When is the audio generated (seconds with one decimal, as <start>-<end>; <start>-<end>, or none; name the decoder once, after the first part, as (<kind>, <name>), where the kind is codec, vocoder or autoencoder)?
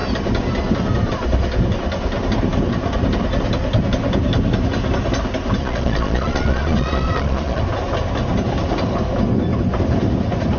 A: 5.6-7.6 (vocoder, Vocos)